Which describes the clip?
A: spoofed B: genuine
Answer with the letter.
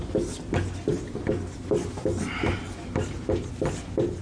B